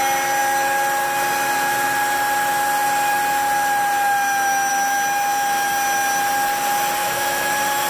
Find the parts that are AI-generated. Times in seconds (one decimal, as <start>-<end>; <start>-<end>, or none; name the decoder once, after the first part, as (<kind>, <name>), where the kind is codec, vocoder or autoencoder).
7.0-7.5 (autoencoder, DAC-VAE)